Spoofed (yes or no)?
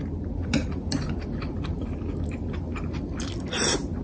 no